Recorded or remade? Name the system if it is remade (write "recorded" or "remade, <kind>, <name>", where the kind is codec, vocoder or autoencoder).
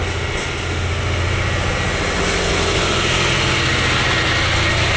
recorded